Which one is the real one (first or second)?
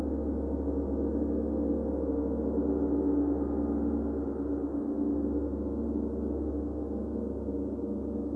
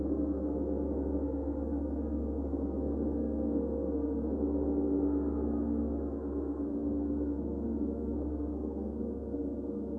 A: first